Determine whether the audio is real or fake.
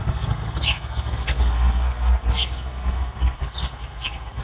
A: fake